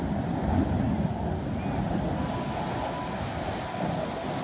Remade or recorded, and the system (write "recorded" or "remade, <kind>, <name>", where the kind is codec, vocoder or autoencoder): recorded